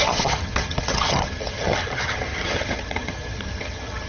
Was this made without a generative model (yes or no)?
no